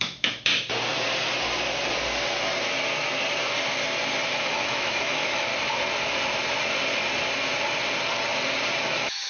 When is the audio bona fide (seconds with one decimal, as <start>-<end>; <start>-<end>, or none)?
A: 0.5-4.4; 5.5-8.8